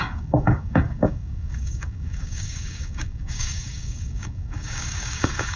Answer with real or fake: fake